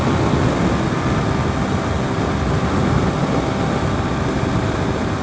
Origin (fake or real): real